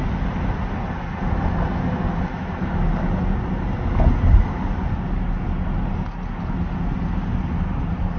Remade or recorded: recorded